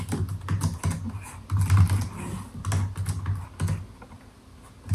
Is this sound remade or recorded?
recorded